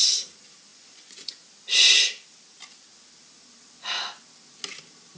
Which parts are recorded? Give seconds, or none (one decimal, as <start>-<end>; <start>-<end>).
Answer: 0.0-0.7; 1.4-5.2